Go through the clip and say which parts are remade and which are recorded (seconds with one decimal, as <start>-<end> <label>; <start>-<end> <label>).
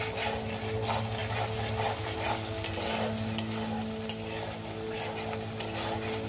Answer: 0.0-6.3 recorded